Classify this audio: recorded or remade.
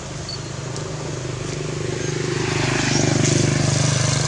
recorded